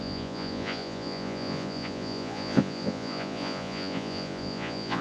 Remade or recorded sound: remade